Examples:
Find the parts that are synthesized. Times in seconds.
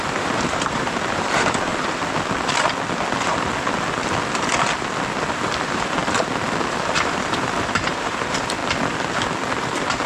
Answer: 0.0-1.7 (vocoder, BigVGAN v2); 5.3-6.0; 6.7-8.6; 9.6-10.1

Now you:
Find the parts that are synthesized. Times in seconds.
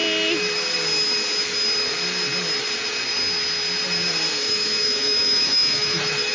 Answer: 4.3-6.3 (autoencoder, DAC-VAE)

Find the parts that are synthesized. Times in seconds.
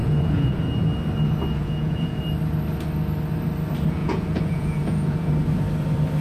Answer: 0.0-0.6 (vocoder, Vocos); 1.6-2.2; 4.0-5.3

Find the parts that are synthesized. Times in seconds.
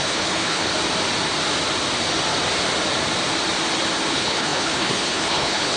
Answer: 0.0-0.7 (codec, HILCodec); 4.1-5.8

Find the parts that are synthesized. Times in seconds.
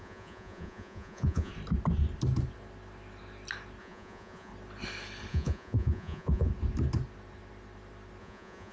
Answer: 0.0-1.5 (vocoder, Vocos); 3.8-4.5; 5.3-6.5; 8.2-8.7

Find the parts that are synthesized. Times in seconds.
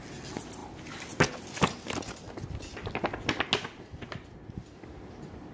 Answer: none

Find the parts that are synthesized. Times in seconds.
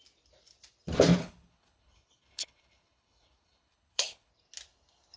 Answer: 1.2-4.3 (codec, HILCodec)